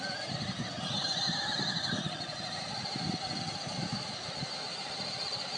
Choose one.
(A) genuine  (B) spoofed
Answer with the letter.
A